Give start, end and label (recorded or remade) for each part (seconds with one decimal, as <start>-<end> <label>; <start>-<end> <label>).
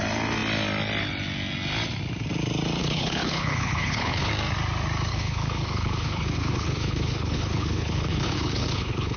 0.0-2.8 recorded; 2.8-4.3 remade; 4.3-5.1 recorded; 5.1-9.2 remade